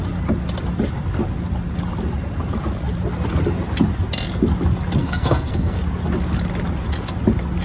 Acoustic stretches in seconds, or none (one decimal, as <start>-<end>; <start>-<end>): 0.0-5.0; 5.8-7.6